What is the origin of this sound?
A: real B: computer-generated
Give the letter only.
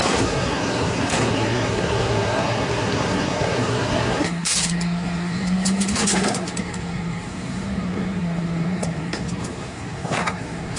B